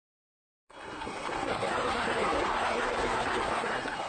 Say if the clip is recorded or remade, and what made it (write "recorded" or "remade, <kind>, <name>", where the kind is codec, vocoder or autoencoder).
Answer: remade, codec, SNAC